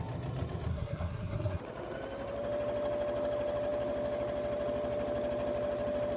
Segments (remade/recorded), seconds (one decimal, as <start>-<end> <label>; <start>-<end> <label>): 0.0-0.7 recorded; 0.7-1.6 remade; 1.6-6.2 recorded